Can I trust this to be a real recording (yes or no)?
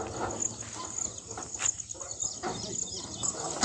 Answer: yes